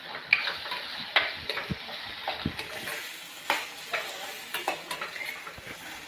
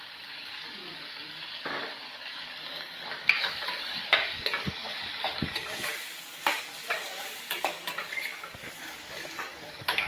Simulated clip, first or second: second